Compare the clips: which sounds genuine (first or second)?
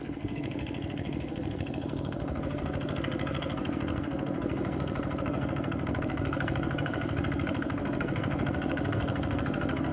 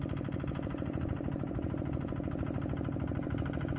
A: second